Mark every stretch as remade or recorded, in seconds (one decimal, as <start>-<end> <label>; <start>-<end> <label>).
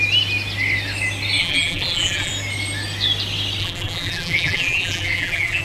0.0-1.4 recorded; 1.4-2.3 remade; 2.3-3.6 recorded; 3.6-5.6 remade